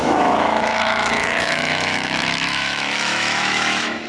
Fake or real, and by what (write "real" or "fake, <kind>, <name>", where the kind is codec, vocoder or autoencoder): fake, autoencoder, DAC-VAE